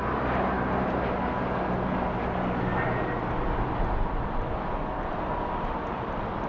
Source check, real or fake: real